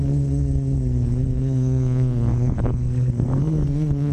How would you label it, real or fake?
fake